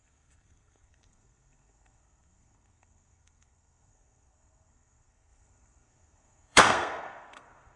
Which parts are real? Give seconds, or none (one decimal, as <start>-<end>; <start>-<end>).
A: none